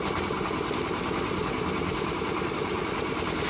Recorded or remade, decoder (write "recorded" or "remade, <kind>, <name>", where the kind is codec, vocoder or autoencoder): recorded